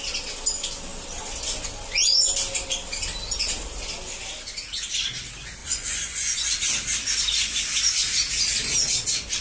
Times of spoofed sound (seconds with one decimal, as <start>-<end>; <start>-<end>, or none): 5.6-6.5